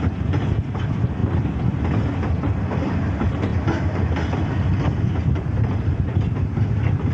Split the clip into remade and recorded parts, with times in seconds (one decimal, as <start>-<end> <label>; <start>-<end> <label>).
0.0-7.1 recorded